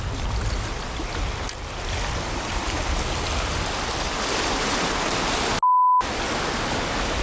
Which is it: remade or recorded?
recorded